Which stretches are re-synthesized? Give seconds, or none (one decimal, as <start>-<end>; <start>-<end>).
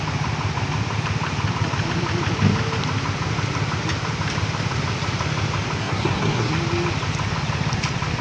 5.8-6.5